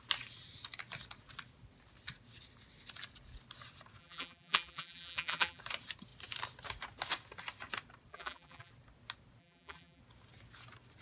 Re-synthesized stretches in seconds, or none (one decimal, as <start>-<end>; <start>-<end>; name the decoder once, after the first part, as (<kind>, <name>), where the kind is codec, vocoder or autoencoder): 4.0-5.6 (vocoder, BigVGAN v2); 8.1-8.7; 9.4-10.0